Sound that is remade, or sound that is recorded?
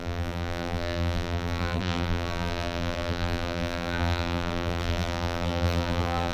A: remade